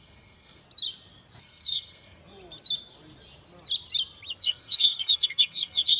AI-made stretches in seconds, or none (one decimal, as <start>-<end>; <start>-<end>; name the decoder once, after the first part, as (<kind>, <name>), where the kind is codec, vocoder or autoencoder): 0.0-0.6 (codec, SNAC); 1.4-2.2; 4.4-6.0